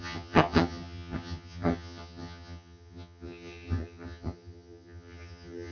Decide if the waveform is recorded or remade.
remade